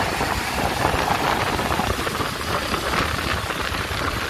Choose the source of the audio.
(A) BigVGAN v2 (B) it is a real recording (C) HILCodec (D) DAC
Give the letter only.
A